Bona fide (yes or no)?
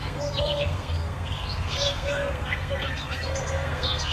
no